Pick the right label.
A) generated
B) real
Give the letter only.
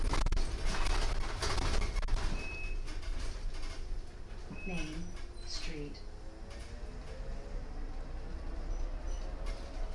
B